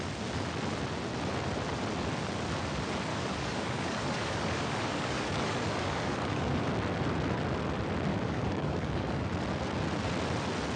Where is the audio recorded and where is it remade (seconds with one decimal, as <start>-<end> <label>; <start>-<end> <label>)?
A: 0.0-3.1 recorded; 3.1-6.7 remade; 6.7-8.1 recorded; 8.1-9.2 remade; 9.2-10.8 recorded

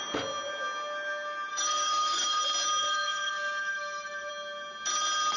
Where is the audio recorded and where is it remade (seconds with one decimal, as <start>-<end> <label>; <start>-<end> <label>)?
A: 0.0-1.5 recorded; 1.5-2.4 remade; 2.4-2.8 recorded; 2.8-4.3 remade; 4.3-5.4 recorded

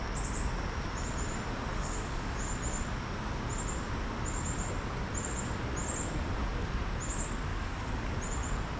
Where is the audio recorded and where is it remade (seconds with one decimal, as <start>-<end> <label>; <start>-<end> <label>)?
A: 0.0-1.7 recorded; 1.7-2.4 remade; 2.4-7.5 recorded; 7.5-8.2 remade; 8.2-8.8 recorded

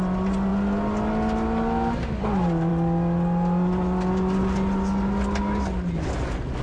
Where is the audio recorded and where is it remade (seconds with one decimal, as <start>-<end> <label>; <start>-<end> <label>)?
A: 0.0-6.6 recorded

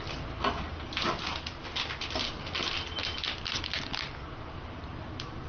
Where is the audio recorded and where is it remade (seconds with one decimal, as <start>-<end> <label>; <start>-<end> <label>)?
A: 0.0-5.5 recorded

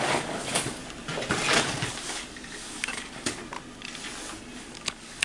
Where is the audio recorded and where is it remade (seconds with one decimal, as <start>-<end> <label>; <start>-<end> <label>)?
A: 0.0-0.8 remade; 0.8-1.6 recorded; 1.6-3.4 remade; 3.4-4.6 recorded; 4.6-5.2 remade

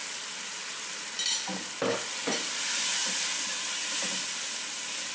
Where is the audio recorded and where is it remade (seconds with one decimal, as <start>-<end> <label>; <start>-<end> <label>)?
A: 0.0-5.1 recorded

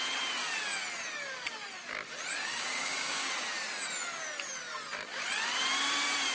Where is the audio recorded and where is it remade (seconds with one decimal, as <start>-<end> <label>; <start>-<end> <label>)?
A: 0.0-2.4 recorded; 2.4-3.3 remade; 3.3-6.3 recorded